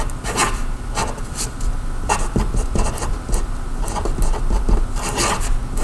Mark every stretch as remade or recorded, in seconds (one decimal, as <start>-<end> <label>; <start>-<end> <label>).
0.0-0.4 recorded; 0.4-3.9 remade; 3.9-5.8 recorded